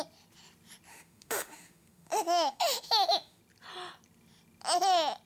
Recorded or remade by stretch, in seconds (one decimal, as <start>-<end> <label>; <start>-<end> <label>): 0.0-0.9 recorded; 0.9-3.4 remade; 3.4-5.3 recorded